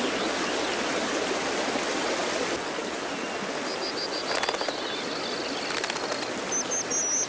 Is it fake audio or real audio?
real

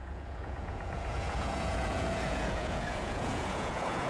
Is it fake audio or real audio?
fake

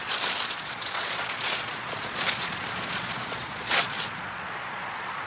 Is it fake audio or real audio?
fake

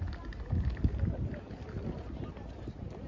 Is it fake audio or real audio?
real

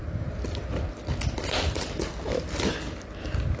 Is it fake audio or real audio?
real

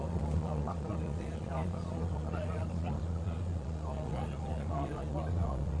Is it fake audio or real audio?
fake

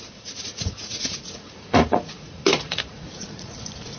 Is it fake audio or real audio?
fake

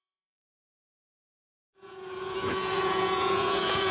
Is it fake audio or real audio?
fake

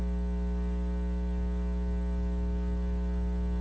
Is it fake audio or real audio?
real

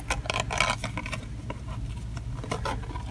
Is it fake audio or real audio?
real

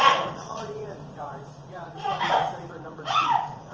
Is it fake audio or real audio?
fake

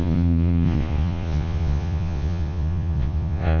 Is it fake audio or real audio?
fake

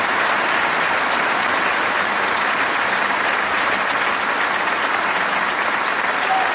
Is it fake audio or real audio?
real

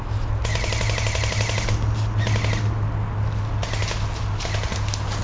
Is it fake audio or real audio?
real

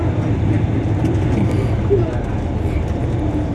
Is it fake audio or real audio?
real